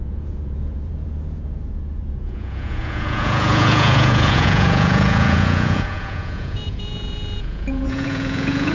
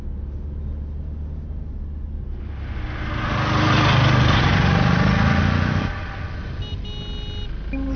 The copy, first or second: first